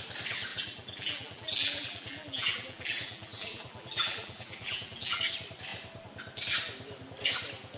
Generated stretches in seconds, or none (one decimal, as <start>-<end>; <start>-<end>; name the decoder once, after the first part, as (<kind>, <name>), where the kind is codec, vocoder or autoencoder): 0.5-5.2 (vocoder, BigVGAN v2)